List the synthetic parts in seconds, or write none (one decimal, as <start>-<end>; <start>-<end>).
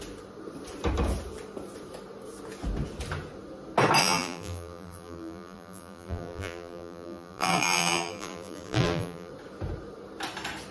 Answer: 4.0-9.3